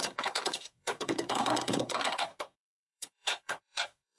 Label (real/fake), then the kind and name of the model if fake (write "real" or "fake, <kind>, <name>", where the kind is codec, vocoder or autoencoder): fake, codec, SNAC